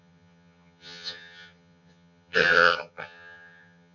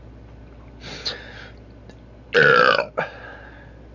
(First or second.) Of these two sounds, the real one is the second